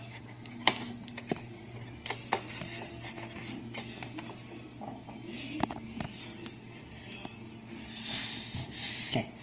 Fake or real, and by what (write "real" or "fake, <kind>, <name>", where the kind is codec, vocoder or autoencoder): real